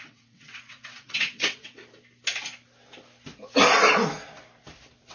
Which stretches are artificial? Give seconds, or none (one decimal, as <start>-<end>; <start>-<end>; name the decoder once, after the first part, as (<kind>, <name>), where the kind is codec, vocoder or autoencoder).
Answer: 0.0-1.8 (vocoder, WaveNeXt)